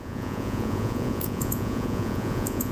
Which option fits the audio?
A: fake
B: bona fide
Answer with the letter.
A